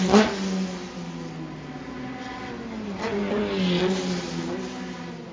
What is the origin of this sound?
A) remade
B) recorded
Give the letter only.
B